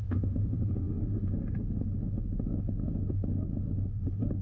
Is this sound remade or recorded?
remade